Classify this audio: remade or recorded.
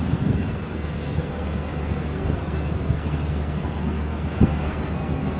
remade